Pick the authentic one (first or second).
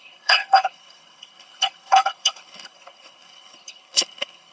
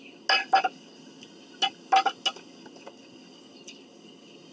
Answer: second